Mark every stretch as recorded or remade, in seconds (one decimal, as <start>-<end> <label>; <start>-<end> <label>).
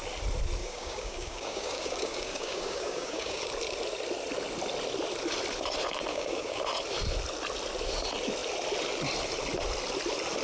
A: 0.0-0.6 recorded; 0.6-3.5 remade; 3.5-6.1 recorded; 6.1-6.6 remade; 6.6-10.4 recorded